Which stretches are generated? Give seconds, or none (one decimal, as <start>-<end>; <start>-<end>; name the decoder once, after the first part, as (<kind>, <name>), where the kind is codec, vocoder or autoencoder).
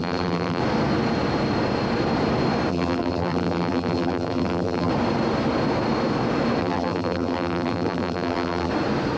0.0-0.6 (vocoder, BigVGAN v2); 2.7-4.9; 6.6-8.7